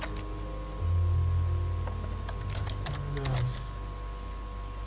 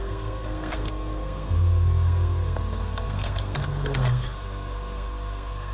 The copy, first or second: second